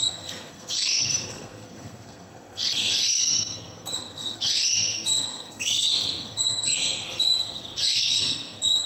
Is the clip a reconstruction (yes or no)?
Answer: yes